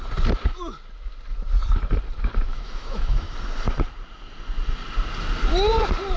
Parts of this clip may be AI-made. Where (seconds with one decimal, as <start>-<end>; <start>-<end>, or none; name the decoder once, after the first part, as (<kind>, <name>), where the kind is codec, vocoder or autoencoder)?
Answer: 2.5-3.3 (autoencoder, DAC-VAE)